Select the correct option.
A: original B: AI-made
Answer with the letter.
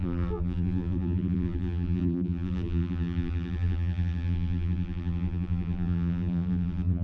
B